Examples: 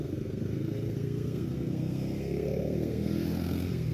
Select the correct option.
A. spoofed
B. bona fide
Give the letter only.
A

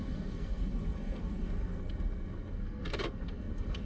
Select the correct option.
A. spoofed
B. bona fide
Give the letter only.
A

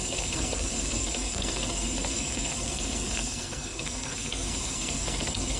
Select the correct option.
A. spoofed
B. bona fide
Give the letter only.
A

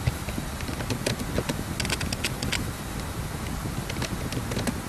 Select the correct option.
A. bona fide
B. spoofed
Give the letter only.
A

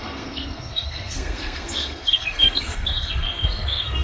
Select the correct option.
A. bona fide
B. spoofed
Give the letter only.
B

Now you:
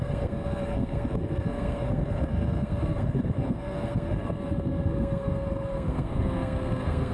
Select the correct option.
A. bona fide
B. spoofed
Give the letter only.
B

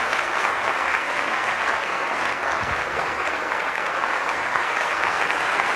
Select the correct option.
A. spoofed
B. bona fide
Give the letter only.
A